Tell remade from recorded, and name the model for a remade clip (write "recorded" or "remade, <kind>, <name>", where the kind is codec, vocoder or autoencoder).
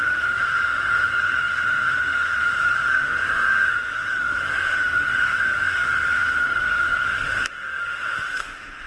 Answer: remade, autoencoder, DAC-VAE